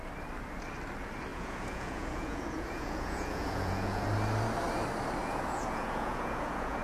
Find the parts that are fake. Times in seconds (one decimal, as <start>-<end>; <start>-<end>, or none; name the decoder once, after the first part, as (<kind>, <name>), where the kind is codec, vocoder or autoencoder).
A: 1.3-4.1 (vocoder, Vocos); 5.2-6.8